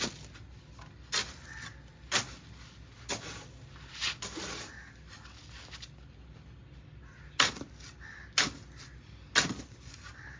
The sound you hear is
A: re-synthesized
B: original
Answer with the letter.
B